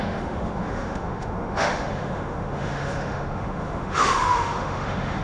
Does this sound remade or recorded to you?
remade